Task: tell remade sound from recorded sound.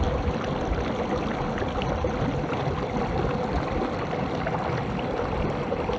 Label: recorded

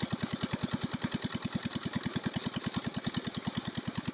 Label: recorded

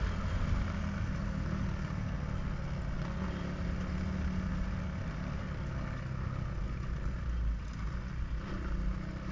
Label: recorded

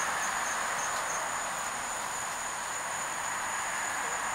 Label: remade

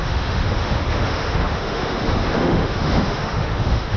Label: remade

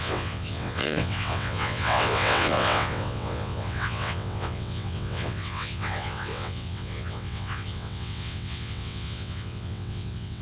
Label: remade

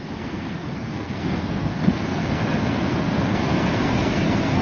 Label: remade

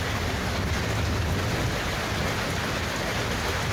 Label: recorded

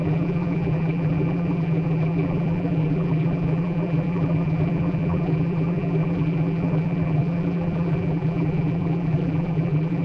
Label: remade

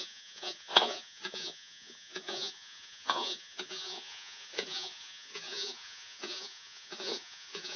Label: remade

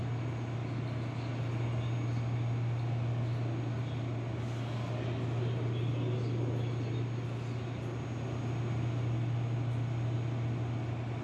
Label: recorded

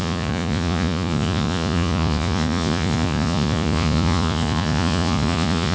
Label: remade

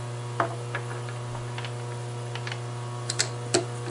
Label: recorded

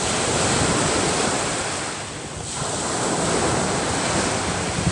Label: recorded